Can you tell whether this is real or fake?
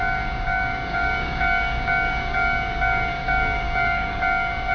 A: fake